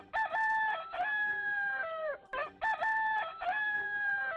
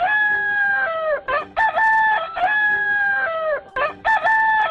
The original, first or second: second